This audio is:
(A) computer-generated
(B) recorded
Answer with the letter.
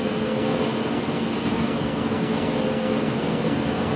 A